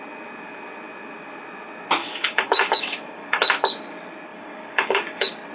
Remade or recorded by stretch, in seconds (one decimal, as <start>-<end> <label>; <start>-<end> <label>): 0.0-2.0 recorded; 2.0-3.4 remade; 3.4-4.3 recorded; 4.3-5.5 remade